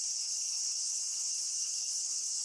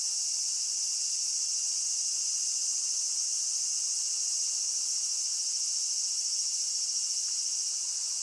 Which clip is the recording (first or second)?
second